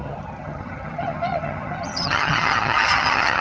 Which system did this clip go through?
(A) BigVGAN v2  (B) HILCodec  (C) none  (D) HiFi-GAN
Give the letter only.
D